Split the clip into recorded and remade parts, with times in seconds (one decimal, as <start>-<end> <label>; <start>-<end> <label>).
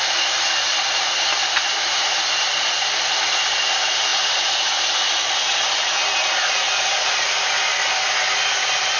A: 0.0-9.0 recorded